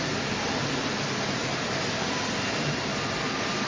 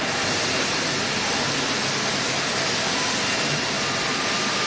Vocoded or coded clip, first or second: first